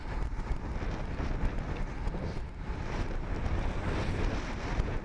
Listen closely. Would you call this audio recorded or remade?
remade